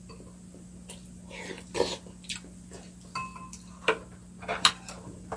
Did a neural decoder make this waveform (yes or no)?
no